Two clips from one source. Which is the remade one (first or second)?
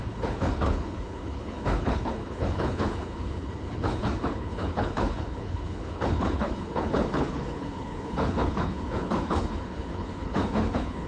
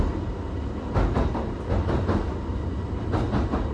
first